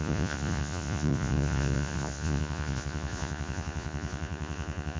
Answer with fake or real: fake